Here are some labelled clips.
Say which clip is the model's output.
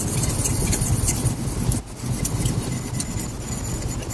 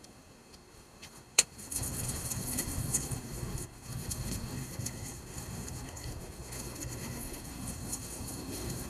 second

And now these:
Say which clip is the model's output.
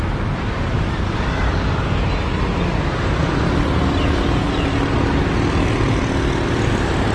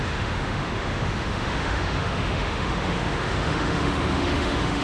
second